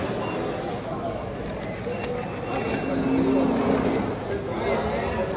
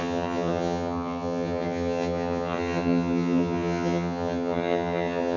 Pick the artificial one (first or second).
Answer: second